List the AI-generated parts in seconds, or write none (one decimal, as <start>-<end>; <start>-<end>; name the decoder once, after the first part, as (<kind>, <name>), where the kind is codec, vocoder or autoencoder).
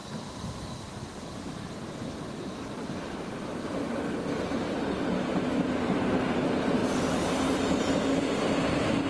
none